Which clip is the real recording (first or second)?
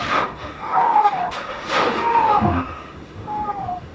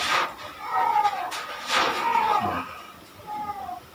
second